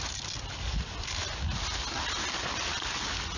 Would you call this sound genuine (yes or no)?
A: yes